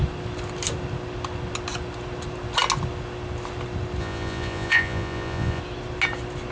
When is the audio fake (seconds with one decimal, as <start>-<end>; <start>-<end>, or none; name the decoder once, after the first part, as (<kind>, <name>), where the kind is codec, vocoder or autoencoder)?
4.0-5.6 (vocoder, Vocos)